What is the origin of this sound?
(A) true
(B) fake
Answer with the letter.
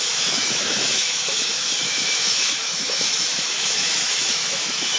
B